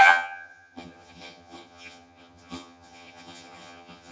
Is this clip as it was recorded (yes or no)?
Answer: no